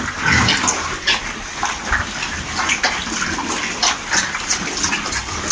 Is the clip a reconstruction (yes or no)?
no